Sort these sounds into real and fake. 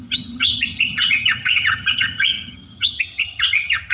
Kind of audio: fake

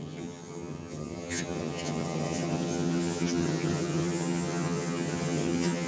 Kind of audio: fake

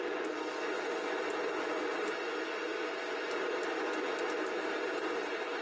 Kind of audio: real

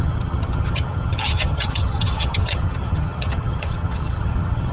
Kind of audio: fake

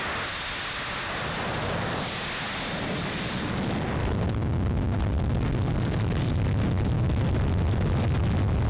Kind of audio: real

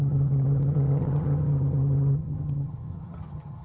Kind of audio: fake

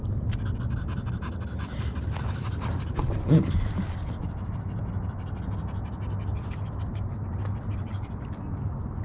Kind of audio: real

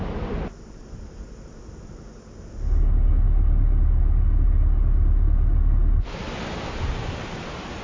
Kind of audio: real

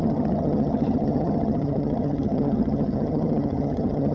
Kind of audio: fake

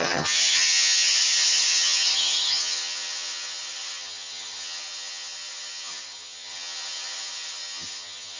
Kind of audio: fake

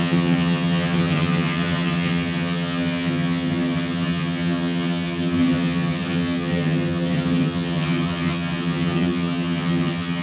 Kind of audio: fake